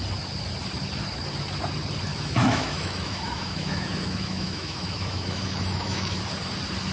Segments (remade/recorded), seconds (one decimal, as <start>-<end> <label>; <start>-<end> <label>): 0.0-2.1 recorded; 2.1-6.2 remade; 6.2-6.9 recorded

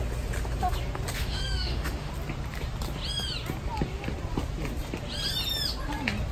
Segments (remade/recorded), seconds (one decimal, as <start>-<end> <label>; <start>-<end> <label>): 0.0-1.2 recorded; 1.2-2.1 remade; 2.1-6.3 recorded